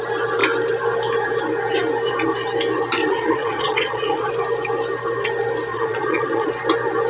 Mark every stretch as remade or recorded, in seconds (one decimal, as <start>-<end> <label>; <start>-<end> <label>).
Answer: 0.0-3.0 recorded; 3.0-4.3 remade; 4.3-5.7 recorded; 5.7-6.5 remade; 6.5-7.1 recorded